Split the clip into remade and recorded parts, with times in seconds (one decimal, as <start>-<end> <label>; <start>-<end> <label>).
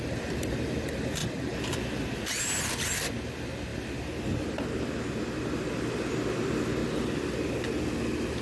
0.0-8.4 recorded